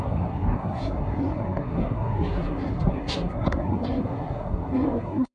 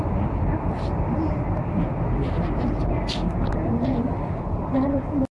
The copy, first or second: first